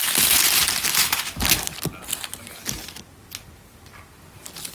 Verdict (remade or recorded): recorded